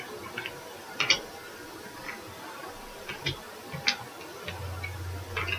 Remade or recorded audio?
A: recorded